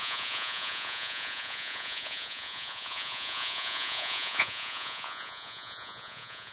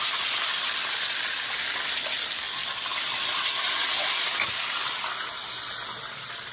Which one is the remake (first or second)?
first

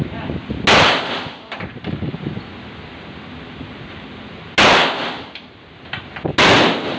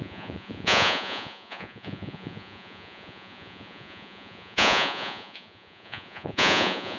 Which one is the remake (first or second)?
second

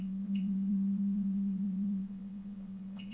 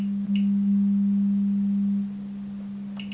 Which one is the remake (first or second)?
first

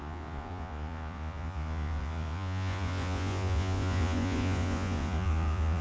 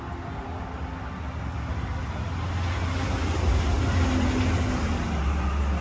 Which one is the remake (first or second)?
first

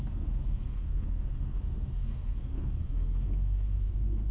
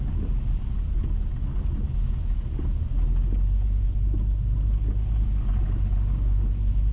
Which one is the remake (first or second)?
first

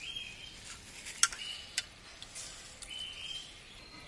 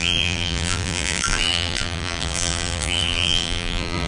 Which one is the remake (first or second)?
second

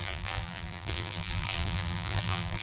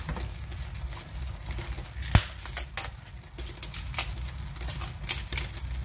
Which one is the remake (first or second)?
first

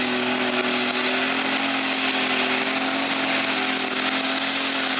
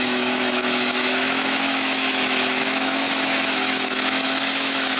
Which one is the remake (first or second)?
second